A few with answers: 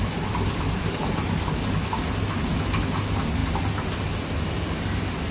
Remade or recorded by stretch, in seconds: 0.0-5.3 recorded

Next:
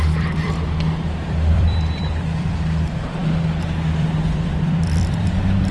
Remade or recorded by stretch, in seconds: 0.0-5.7 remade